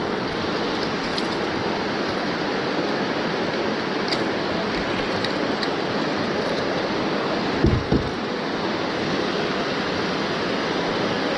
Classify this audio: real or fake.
real